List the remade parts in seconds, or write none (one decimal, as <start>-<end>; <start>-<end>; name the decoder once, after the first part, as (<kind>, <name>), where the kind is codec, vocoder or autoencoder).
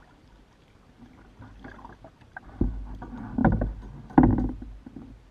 none